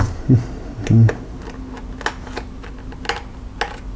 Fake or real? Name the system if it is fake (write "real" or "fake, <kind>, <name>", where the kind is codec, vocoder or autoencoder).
real